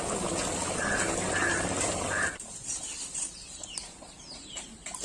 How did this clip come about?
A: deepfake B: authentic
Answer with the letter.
B